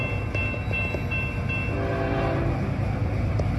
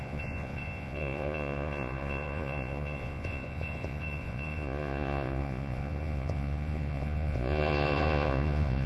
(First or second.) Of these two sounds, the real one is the first